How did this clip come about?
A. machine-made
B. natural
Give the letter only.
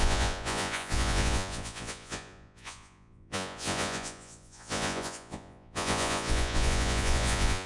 A